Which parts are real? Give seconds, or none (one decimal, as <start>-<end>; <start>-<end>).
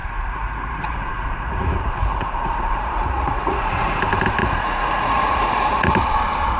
4.0-4.4; 5.9-6.6